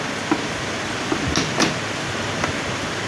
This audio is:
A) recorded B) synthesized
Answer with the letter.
A